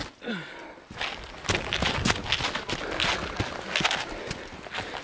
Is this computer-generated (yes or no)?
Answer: no